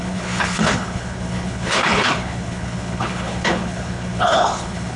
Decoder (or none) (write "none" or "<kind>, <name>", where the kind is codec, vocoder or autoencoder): codec, HILCodec